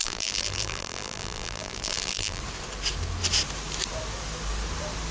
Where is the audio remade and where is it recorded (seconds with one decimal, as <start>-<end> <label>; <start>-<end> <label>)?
0.0-2.4 remade; 2.4-5.1 recorded

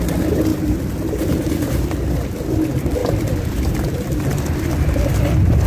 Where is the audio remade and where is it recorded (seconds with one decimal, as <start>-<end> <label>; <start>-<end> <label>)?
0.0-0.5 recorded; 0.5-1.3 remade; 1.3-3.0 recorded; 3.0-4.7 remade; 4.7-5.7 recorded